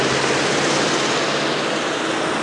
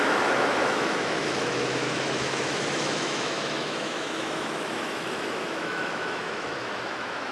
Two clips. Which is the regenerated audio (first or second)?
second